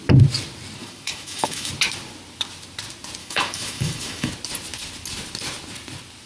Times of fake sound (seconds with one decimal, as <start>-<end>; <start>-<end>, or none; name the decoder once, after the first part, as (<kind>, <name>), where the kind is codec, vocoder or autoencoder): 0.8-1.7 (autoencoder, DAC-VAE); 3.2-4.3